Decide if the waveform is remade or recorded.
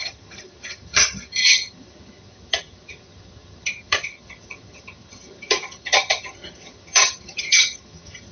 remade